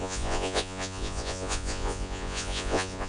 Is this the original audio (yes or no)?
no